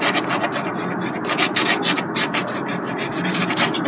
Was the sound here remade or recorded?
recorded